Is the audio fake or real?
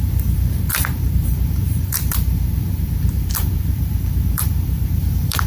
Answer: fake